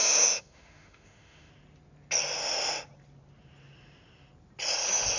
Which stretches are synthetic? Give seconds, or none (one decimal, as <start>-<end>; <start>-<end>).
0.0-1.5

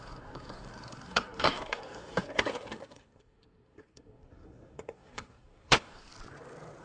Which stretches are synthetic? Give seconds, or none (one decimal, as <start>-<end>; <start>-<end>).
0.0-6.1

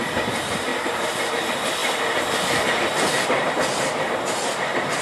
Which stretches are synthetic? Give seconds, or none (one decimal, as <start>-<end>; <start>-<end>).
0.0-0.7; 1.3-5.0